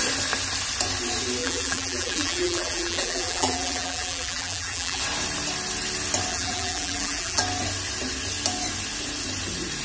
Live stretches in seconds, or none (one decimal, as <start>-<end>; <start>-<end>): 0.0-1.4; 5.0-6.3; 7.4-9.8